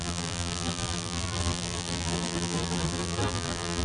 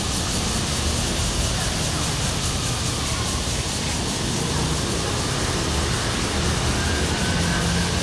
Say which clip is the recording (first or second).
second